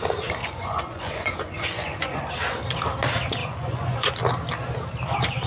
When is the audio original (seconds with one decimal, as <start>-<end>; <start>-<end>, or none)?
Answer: 0.0-0.4; 2.3-3.4; 4.1-5.5